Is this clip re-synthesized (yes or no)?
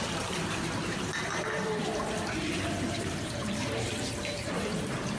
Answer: yes